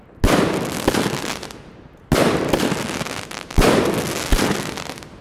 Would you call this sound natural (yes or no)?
yes